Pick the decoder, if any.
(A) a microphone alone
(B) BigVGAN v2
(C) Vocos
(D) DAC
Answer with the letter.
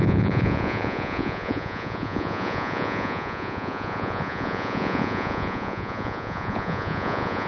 C